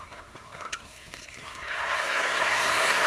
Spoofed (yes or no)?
yes